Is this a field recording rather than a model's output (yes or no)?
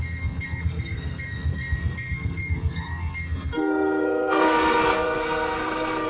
no